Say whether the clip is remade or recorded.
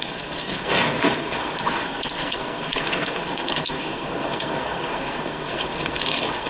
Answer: remade